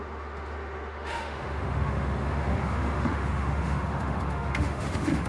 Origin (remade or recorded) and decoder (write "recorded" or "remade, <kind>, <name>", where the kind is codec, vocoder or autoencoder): remade, autoencoder, DAC-VAE